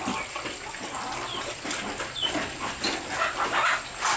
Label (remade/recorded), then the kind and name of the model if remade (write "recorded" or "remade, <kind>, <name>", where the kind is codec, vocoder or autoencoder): recorded